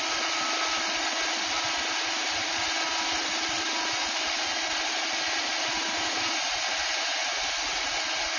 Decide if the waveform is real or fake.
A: real